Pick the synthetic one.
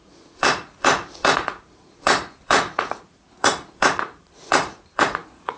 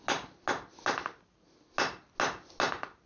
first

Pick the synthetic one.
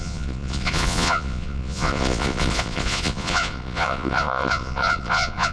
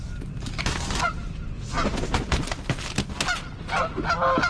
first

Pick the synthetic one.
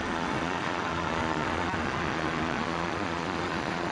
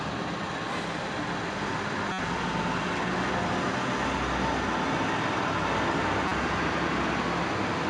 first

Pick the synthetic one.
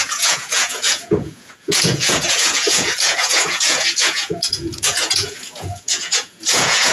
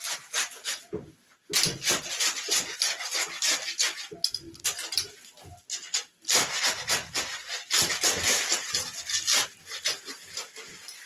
first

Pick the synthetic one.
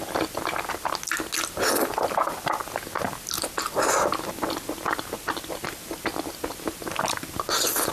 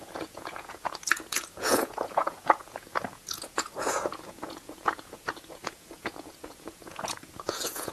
second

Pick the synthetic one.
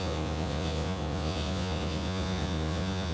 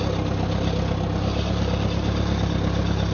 first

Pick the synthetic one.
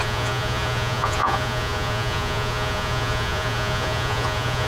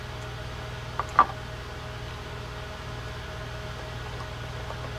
first